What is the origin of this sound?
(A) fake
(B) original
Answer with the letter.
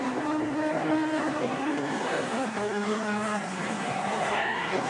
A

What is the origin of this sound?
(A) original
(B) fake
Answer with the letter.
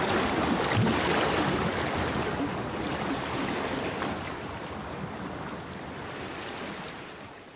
A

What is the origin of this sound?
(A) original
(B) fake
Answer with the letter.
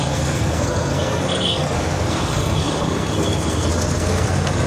B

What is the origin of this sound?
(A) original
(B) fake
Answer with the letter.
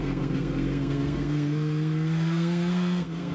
B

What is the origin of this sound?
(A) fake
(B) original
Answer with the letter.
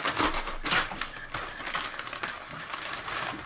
B